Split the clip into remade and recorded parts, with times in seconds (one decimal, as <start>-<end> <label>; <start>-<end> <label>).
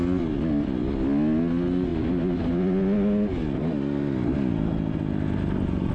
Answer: 0.0-5.9 recorded